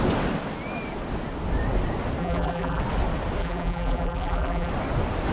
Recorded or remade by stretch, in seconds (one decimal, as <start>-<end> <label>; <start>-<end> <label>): 0.0-2.2 recorded; 2.2-2.8 remade; 2.8-3.4 recorded; 3.4-4.7 remade; 4.7-5.3 recorded